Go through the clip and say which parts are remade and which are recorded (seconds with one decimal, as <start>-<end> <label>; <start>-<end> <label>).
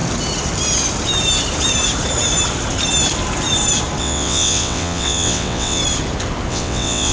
0.0-4.0 recorded; 4.0-5.8 remade; 5.8-6.5 recorded; 6.5-7.1 remade